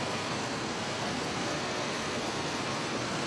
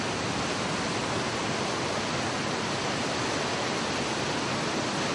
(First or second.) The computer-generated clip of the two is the first